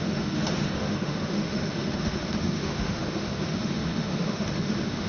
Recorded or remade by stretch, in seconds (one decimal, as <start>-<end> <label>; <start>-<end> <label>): 0.0-5.1 remade